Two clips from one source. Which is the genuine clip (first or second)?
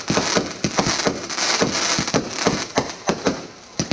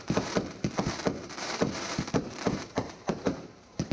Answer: first